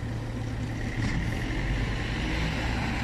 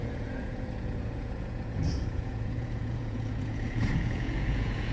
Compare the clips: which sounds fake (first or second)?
second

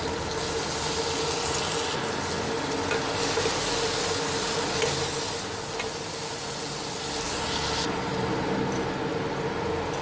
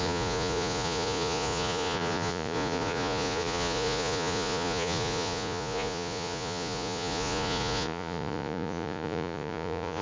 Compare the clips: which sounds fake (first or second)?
second